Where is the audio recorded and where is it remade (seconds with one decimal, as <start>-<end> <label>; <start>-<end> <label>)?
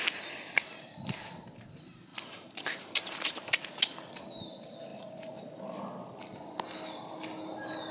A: 0.0-2.1 recorded; 2.1-2.8 remade; 2.8-4.9 recorded; 4.9-6.2 remade; 6.2-7.9 recorded